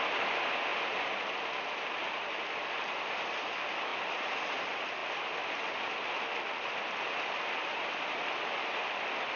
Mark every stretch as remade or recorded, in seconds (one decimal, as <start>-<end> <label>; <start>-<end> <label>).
0.0-3.9 recorded; 3.9-4.4 remade; 4.4-9.4 recorded